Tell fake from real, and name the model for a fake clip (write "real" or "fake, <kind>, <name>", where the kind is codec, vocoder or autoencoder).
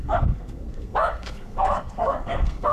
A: fake, codec, SNAC